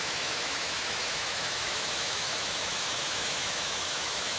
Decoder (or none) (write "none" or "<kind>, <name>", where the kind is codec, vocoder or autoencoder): autoencoder, DAC-VAE